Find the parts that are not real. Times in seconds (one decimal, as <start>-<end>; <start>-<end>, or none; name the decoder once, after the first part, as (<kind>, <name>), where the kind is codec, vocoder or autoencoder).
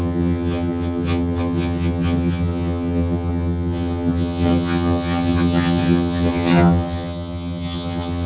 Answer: 0.0-8.3 (vocoder, HiFi-GAN)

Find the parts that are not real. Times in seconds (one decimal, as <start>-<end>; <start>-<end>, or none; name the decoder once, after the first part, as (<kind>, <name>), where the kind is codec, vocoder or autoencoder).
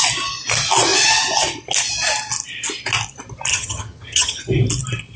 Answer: 3.5-4.4 (vocoder, HiFi-GAN)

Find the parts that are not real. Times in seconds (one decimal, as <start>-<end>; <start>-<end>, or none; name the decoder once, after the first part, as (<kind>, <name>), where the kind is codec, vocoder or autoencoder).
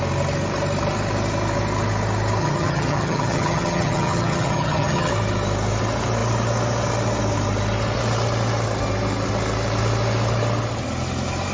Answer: 2.4-5.1 (vocoder, HiFi-GAN)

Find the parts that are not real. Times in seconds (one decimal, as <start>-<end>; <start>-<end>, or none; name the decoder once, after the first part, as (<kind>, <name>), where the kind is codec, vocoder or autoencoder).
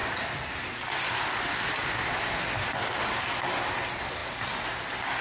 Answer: none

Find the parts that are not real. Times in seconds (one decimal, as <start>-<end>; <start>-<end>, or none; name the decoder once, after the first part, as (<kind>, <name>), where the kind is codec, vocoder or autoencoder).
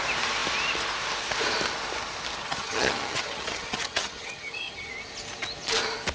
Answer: 2.4-4.9 (vocoder, HiFi-GAN)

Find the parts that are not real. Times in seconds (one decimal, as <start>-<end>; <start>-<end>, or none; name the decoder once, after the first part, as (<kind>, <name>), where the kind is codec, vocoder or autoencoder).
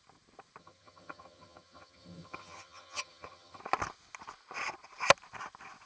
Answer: 0.6-3.6 (vocoder, HiFi-GAN)